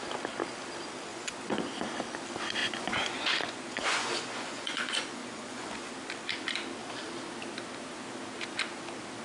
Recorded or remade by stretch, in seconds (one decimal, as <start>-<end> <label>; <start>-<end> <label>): 0.0-1.1 recorded; 1.1-2.0 remade; 2.0-2.6 recorded; 2.6-5.9 remade; 5.9-9.2 recorded